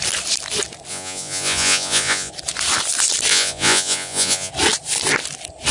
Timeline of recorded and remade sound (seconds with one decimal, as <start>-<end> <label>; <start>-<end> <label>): 0.0-0.9 recorded; 0.9-2.3 remade; 2.3-3.3 recorded; 3.3-4.5 remade; 4.5-5.7 recorded